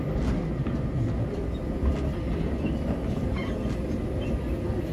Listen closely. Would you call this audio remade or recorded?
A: recorded